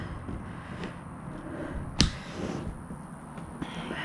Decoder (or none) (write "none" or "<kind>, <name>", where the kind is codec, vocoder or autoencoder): none